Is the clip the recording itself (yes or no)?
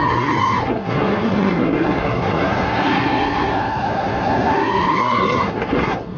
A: no